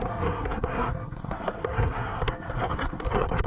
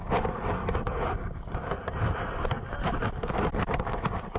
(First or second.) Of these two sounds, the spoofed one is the first